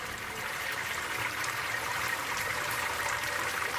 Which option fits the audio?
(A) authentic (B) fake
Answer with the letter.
B